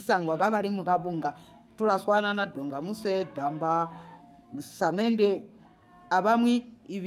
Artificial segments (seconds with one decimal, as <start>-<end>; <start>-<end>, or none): 0.0-6.0